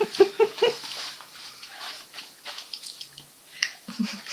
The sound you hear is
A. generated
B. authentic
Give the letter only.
A